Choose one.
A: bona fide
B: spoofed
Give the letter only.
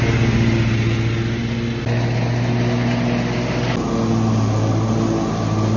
A